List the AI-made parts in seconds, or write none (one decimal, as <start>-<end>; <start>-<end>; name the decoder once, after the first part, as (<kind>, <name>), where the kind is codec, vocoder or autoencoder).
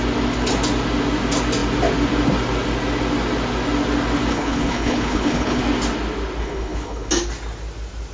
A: 4.3-5.6 (codec, HILCodec); 6.4-7.1